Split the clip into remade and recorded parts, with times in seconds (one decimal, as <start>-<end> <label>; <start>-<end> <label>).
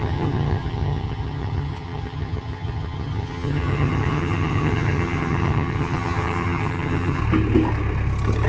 0.0-7.2 remade; 7.2-8.5 recorded